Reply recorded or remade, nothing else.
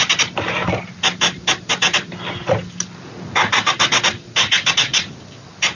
recorded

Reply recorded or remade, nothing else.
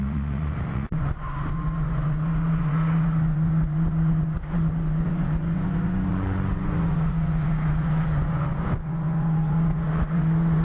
remade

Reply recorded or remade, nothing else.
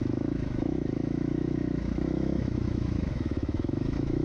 remade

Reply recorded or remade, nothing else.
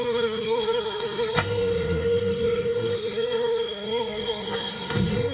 remade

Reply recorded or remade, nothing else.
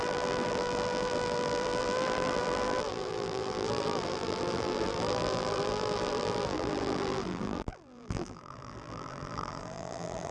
remade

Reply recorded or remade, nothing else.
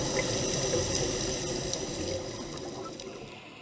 recorded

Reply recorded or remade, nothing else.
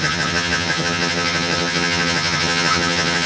remade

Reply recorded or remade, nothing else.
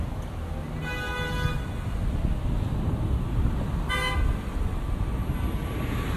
recorded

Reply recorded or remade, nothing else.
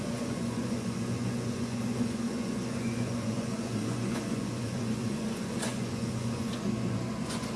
remade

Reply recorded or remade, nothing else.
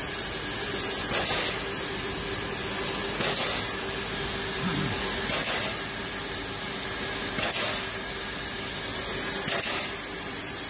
recorded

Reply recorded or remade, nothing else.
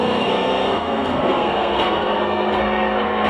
remade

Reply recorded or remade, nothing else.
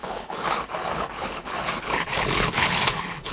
remade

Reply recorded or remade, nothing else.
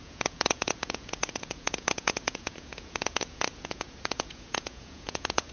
remade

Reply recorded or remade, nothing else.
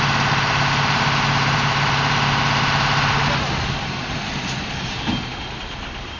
recorded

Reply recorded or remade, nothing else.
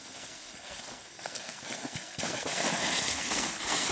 remade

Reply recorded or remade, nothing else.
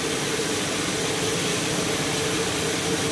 recorded